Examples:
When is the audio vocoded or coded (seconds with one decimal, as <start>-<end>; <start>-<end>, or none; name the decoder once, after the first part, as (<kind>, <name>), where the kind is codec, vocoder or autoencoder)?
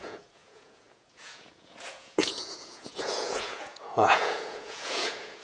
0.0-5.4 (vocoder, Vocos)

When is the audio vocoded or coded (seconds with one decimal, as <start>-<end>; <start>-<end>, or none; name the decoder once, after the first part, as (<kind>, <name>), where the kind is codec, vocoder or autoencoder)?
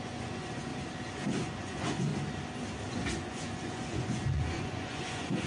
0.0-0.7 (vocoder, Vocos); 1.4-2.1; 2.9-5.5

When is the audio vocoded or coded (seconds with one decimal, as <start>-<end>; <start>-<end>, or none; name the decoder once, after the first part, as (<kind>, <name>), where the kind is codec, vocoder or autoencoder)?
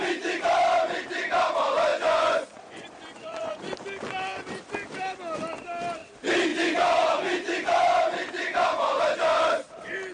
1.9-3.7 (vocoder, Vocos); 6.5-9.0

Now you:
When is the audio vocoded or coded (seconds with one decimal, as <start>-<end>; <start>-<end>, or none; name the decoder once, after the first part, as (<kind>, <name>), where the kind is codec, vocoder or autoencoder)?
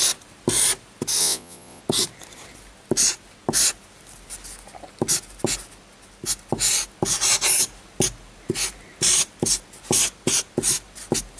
1.2-1.8 (vocoder, Vocos)